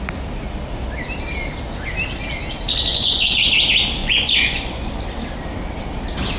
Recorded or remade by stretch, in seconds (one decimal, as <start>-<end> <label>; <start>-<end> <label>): 0.0-2.9 recorded; 2.9-3.5 remade; 3.5-4.0 recorded; 4.0-5.0 remade; 5.0-6.4 recorded